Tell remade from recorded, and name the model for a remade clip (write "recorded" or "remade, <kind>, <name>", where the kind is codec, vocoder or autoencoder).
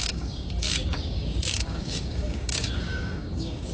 remade, codec, DAC